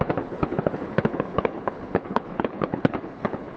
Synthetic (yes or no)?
yes